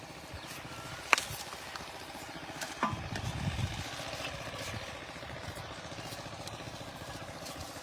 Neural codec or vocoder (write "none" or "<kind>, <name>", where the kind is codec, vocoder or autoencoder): none